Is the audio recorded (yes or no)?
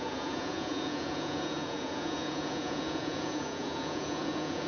no